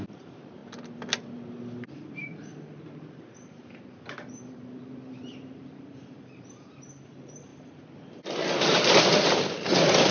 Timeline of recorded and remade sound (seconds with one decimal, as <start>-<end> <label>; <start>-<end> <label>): 0.0-0.6 remade; 0.6-1.9 recorded; 1.9-7.5 remade; 7.5-8.6 recorded; 8.6-10.1 remade